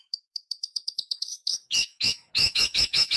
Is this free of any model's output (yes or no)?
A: no